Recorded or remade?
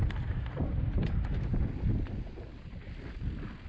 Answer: recorded